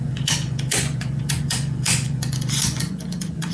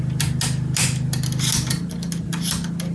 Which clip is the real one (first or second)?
second